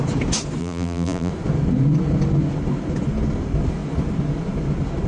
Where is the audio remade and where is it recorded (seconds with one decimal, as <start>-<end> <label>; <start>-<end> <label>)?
0.0-0.6 recorded; 0.6-1.3 remade; 1.3-5.1 recorded